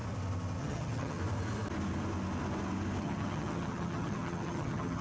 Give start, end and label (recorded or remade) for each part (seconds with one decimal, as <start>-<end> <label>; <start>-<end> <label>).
0.0-0.6 recorded; 0.6-1.2 remade; 1.2-3.0 recorded; 3.0-5.0 remade